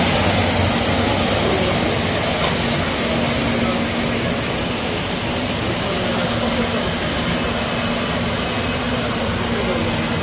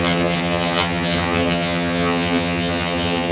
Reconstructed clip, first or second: second